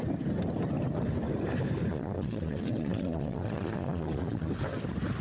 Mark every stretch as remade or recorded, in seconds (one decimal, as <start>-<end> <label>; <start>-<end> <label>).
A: 0.0-1.9 recorded; 1.9-4.5 remade; 4.5-5.2 recorded